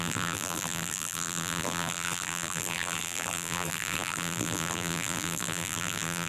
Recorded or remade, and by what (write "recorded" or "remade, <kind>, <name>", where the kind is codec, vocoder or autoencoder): remade, vocoder, BigVGAN v2